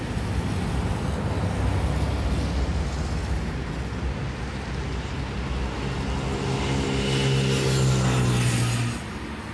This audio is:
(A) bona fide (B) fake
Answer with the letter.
A